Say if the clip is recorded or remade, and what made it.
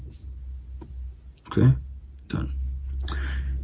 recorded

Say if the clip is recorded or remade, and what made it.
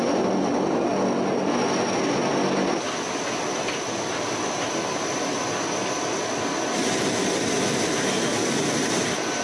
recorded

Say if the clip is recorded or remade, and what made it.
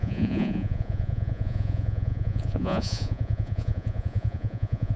remade, vocoder, Vocos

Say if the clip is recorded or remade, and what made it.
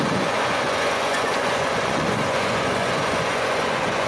remade, vocoder, Vocos